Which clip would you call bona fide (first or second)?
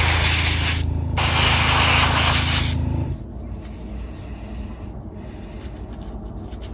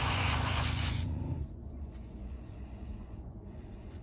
first